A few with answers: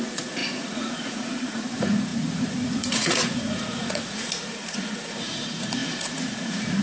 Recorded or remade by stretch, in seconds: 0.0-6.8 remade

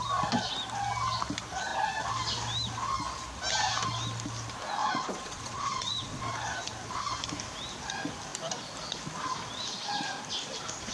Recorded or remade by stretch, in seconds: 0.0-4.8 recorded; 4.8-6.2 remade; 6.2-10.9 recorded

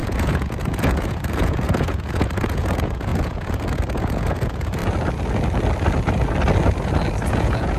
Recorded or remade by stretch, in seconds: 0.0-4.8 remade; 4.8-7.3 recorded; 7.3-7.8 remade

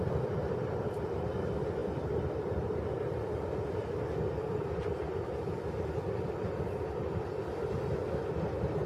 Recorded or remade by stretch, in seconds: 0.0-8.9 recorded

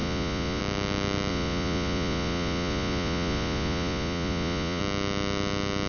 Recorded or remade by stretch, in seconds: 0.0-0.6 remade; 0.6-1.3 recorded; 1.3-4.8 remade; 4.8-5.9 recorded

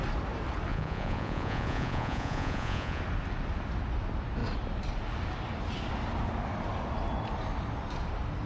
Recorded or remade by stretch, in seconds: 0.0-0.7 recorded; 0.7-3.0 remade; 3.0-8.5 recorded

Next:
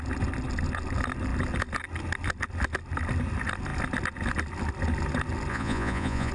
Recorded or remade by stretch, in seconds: 0.0-5.5 recorded; 5.5-6.3 remade